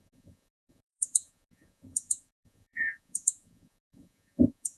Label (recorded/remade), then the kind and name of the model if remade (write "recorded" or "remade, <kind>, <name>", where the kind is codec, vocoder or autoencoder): remade, vocoder, Vocos